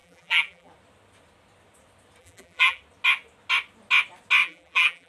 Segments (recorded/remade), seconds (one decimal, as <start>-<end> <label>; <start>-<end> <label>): 0.0-0.7 remade; 0.7-2.2 recorded; 2.2-2.8 remade; 2.8-4.4 recorded; 4.4-5.1 remade